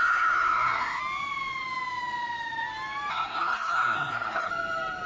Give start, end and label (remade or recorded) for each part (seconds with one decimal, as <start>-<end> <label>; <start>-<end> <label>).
0.0-1.0 remade; 1.0-3.1 recorded; 3.1-4.5 remade; 4.5-5.1 recorded